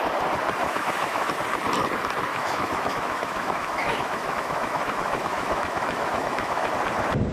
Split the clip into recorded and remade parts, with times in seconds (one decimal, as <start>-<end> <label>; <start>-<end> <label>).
0.0-0.6 recorded; 0.6-1.3 remade; 1.3-2.3 recorded; 2.3-6.7 remade; 6.7-7.3 recorded